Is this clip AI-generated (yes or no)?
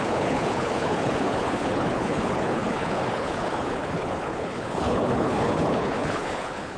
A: yes